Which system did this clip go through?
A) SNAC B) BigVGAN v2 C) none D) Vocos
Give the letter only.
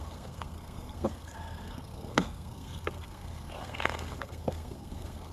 A